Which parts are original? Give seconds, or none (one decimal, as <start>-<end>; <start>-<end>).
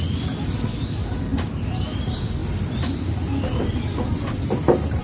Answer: 2.4-3.6